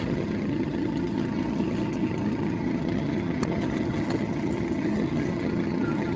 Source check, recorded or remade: remade